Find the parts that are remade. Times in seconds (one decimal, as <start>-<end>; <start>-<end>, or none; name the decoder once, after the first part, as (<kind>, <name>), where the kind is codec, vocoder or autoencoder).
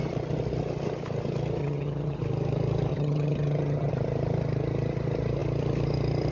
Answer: 1.6-2.2 (vocoder, HiFi-GAN); 2.9-3.9